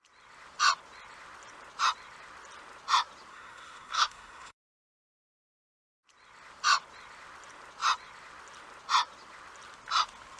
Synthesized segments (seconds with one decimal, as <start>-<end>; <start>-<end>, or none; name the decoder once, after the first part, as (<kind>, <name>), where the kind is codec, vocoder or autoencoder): 3.3-4.9 (codec, SNAC)